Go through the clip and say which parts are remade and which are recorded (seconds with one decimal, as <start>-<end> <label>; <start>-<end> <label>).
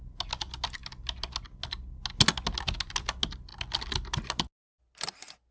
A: 0.0-5.5 recorded